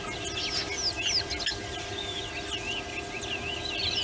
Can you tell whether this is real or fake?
real